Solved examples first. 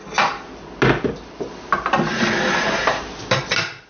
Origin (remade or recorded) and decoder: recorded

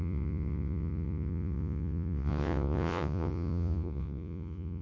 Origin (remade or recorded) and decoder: remade, vocoder, Vocos